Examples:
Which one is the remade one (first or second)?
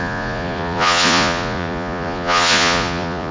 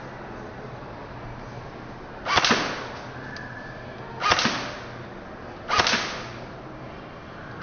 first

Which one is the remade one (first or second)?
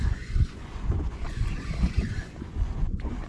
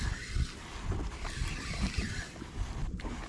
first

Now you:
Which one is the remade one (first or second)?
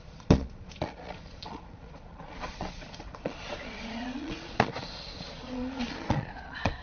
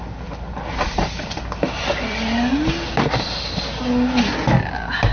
first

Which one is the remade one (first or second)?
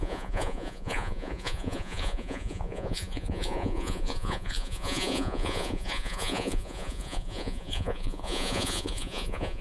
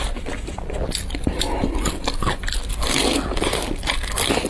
first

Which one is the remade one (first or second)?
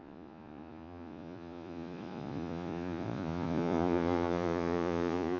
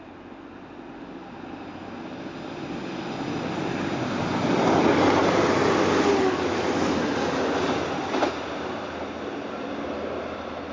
first